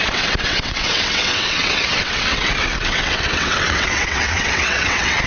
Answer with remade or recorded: remade